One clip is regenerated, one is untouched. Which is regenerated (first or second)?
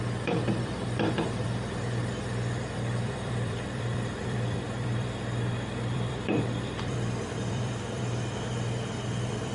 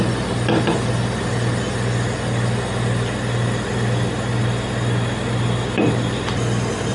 first